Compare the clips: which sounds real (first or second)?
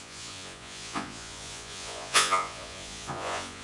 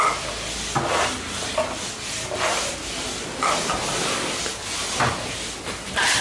second